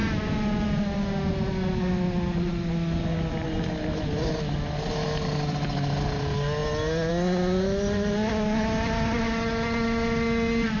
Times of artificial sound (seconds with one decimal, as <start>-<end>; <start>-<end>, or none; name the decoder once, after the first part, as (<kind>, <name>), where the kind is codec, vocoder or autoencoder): none